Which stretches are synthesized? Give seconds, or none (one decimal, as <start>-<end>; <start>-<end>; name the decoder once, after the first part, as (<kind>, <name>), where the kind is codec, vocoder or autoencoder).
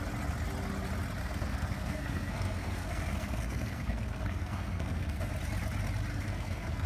1.2-5.3 (codec, SNAC); 6.1-6.9